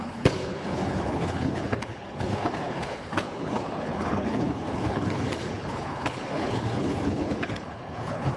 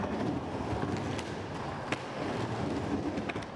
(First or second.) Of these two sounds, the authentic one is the second